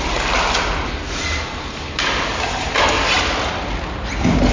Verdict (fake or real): real